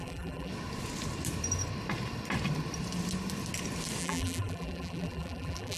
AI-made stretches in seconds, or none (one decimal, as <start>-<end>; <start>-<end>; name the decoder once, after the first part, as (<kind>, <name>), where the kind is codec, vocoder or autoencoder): 0.0-0.5 (vocoder, BigVGAN v2); 4.0-5.8